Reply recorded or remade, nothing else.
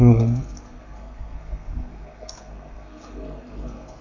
remade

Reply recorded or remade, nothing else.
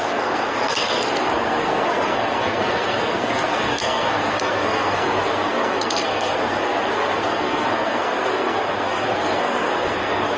remade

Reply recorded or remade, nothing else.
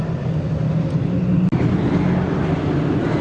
recorded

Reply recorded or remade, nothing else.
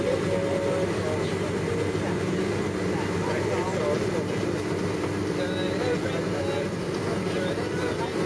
recorded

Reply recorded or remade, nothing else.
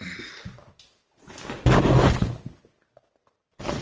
recorded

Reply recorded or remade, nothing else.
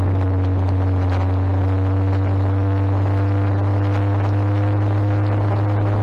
recorded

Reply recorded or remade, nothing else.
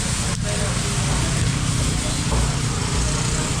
recorded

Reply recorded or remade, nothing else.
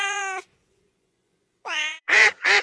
remade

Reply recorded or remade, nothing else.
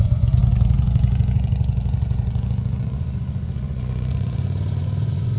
remade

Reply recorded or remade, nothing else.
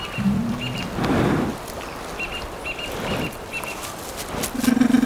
recorded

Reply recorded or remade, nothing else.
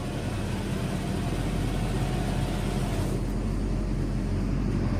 recorded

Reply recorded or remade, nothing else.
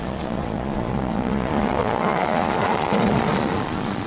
remade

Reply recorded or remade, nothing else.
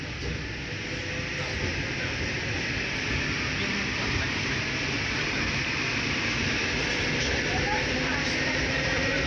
recorded